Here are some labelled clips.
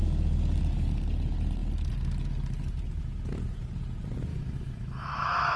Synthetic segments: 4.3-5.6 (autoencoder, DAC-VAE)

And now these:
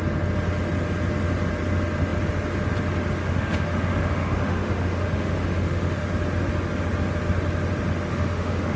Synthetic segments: 3.2-6.1 (autoencoder, DAC-VAE); 8.1-8.8

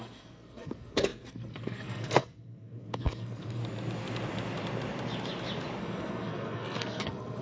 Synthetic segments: 0.0-3.6 (codec, SNAC); 5.8-7.4

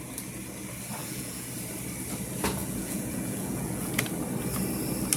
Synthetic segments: 1.0-1.5 (vocoder, Vocos); 2.6-4.0